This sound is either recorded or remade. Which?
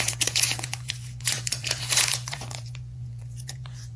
remade